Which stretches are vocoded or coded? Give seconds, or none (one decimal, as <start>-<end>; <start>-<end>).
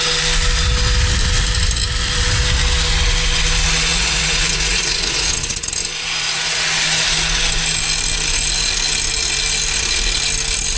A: 3.9-5.7